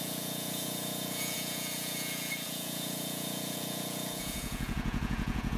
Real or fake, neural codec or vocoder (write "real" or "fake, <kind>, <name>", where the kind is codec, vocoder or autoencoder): fake, vocoder, Vocos